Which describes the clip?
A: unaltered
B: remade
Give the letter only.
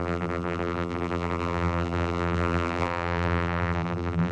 B